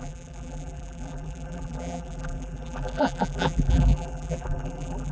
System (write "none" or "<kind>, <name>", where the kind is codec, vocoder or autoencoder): vocoder, BigVGAN v2